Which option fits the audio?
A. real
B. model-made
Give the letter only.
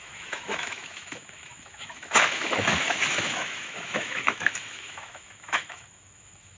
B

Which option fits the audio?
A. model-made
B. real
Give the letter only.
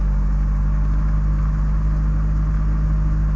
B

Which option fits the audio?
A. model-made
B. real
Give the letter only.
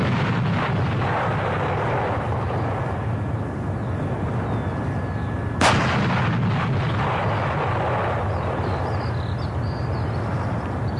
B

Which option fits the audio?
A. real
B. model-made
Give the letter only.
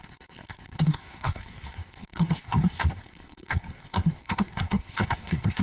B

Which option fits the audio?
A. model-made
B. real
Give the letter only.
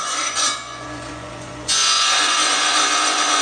A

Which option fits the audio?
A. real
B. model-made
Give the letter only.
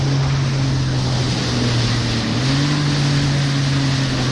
A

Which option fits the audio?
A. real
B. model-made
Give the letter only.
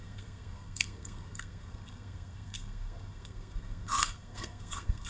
B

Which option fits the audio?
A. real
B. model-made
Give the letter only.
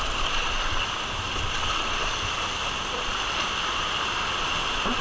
A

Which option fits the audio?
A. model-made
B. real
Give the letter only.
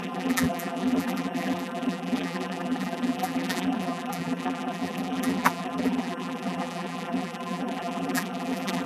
A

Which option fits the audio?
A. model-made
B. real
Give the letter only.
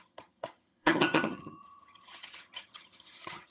A